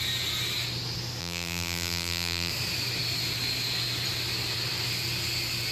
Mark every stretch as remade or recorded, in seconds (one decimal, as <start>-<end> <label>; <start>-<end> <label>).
0.0-1.2 recorded; 1.2-2.5 remade; 2.5-5.7 recorded